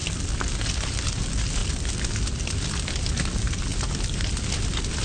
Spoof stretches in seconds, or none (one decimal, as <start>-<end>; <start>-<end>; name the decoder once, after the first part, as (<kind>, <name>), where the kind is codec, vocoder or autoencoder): none